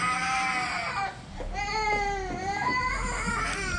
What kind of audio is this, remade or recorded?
recorded